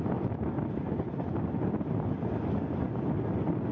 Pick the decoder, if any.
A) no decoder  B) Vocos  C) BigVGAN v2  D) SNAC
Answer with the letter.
A